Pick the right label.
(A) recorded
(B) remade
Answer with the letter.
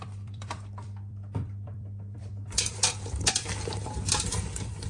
B